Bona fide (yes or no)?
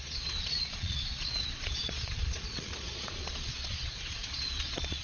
no